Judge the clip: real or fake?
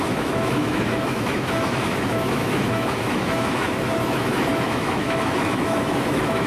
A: fake